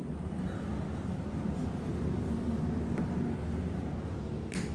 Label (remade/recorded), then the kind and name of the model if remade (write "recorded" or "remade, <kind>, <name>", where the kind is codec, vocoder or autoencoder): recorded